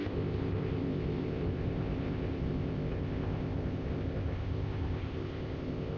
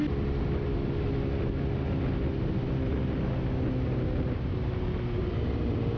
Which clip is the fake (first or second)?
first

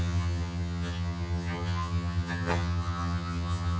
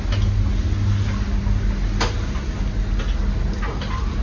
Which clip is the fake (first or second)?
first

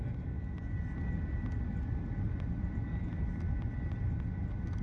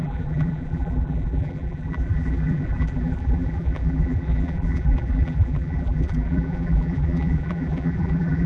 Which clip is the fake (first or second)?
second